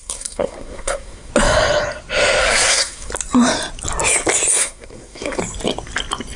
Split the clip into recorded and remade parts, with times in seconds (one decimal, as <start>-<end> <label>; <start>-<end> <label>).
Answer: 0.0-1.3 remade; 1.3-2.4 recorded; 2.4-3.1 remade; 3.1-4.6 recorded; 4.6-5.4 remade; 5.4-6.4 recorded